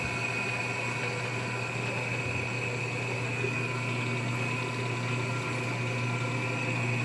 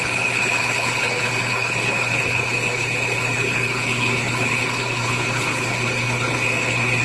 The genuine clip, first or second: first